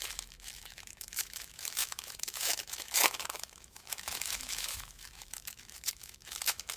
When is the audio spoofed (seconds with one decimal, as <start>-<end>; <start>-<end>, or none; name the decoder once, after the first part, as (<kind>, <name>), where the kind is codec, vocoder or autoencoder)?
0.0-6.8 (autoencoder, DAC-VAE)